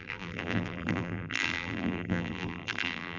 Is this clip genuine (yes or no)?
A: no